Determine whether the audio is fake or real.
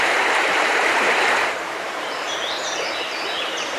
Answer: fake